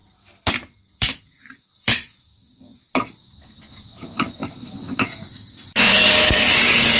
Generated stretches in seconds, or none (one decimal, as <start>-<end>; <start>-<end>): 1.0-7.0